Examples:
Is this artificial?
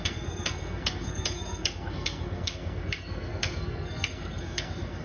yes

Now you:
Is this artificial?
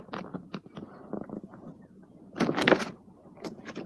no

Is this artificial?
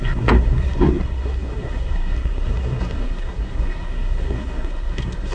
yes